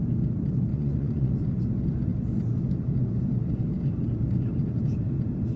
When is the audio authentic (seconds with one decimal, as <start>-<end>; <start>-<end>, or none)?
0.0-0.7; 1.3-5.6